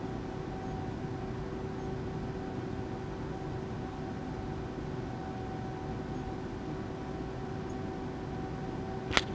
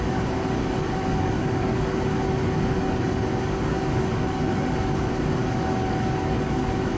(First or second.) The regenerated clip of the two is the second